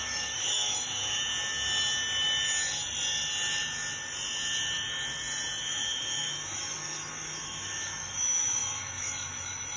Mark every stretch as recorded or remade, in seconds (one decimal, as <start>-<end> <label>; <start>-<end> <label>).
0.0-1.3 remade; 1.3-5.6 recorded; 5.6-9.8 remade